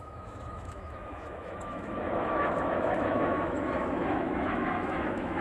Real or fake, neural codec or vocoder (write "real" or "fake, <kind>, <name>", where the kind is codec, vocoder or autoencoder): fake, autoencoder, DAC-VAE